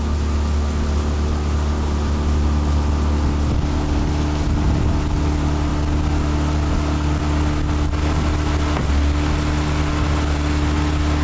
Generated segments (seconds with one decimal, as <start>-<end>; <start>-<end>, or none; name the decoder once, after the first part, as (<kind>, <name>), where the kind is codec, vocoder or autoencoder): none